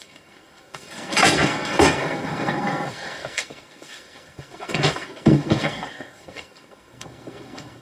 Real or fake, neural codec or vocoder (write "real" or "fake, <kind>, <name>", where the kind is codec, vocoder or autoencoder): fake, codec, SNAC